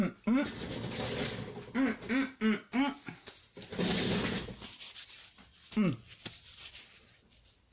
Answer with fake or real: real